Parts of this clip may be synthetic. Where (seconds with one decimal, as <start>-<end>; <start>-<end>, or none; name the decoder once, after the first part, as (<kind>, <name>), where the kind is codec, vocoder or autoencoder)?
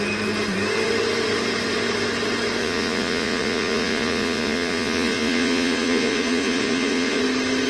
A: 2.6-7.2 (vocoder, Vocos)